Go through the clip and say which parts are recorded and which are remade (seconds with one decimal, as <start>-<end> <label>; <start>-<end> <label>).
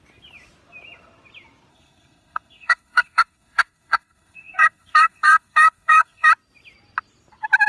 0.0-1.7 recorded; 1.7-6.3 remade; 6.3-7.7 recorded